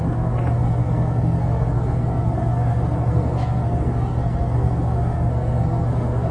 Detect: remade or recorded remade